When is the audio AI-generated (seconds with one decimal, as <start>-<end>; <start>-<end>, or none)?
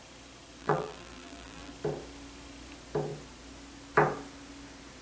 0.6-1.7